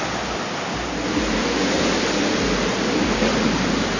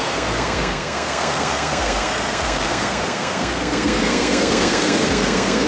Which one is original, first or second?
first